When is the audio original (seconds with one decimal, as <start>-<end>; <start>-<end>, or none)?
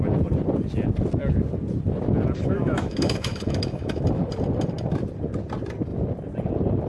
0.0-2.4; 4.0-6.9